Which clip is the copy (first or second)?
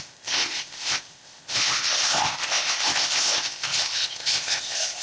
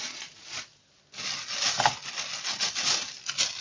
first